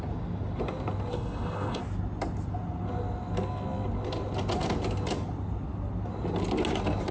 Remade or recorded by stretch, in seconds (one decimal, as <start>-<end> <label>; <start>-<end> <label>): 0.0-1.1 recorded; 1.1-1.8 remade; 1.8-7.1 recorded